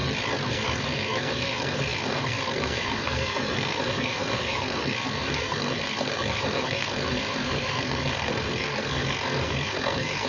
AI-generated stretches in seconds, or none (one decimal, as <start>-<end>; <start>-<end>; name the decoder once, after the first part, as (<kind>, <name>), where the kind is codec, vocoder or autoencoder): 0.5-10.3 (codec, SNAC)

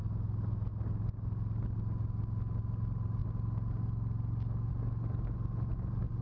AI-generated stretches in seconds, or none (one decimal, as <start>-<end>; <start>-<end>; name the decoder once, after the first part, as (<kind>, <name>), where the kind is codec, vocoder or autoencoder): none

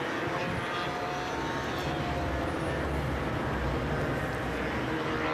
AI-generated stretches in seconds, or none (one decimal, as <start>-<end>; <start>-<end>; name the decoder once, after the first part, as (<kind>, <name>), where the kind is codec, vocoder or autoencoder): none

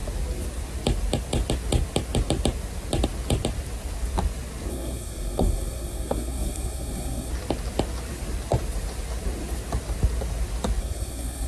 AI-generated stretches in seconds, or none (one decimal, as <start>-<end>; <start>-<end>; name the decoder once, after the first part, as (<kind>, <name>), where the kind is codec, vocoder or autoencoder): 4.7-7.3 (codec, SNAC); 10.8-11.5